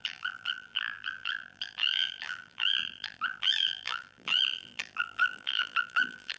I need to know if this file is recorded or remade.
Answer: remade